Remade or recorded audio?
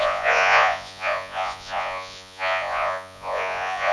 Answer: remade